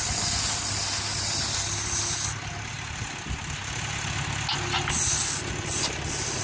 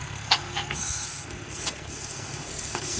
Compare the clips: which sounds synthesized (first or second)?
second